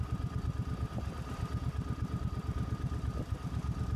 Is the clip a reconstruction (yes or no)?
no